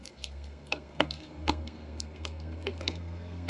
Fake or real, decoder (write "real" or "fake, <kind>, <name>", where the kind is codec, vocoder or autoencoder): fake, codec, SNAC